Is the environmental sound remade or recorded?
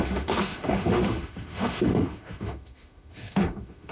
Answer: remade